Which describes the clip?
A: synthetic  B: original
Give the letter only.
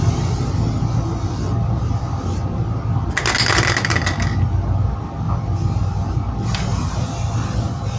B